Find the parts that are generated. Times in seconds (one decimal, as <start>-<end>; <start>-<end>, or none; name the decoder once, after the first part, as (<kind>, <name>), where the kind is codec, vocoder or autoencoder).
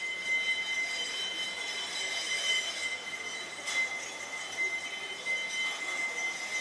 none